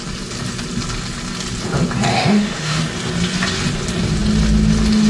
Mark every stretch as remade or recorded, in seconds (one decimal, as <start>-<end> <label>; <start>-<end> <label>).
0.0-2.1 recorded; 2.1-2.8 remade; 2.8-5.1 recorded

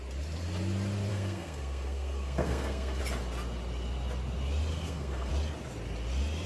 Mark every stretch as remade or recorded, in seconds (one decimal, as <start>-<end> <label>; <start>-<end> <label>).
0.0-1.1 recorded; 1.1-3.0 remade; 3.0-4.7 recorded; 4.7-5.3 remade; 5.3-6.5 recorded

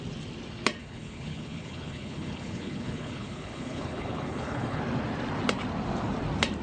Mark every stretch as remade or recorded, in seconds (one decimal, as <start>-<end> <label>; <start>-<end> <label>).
0.0-0.8 recorded; 0.8-4.8 remade; 4.8-6.6 recorded

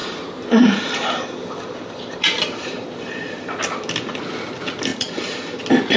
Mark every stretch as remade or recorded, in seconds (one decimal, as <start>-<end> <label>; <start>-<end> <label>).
0.0-3.6 remade; 3.6-4.9 recorded; 4.9-5.6 remade; 5.6-6.0 recorded

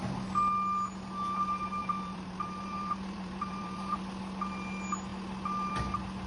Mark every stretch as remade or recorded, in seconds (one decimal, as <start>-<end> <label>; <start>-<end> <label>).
0.0-1.8 recorded; 1.8-4.0 remade; 4.0-6.3 recorded

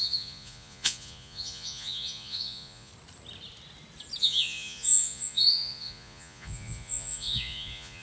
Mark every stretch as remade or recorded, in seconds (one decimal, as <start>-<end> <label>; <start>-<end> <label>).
0.0-2.9 remade; 2.9-4.2 recorded; 4.2-8.0 remade

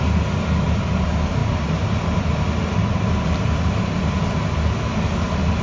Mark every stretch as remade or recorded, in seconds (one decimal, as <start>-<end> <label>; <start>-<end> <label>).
0.0-5.6 recorded

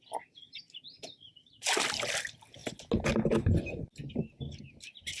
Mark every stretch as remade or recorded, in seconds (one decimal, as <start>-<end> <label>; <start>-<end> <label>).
0.0-5.2 recorded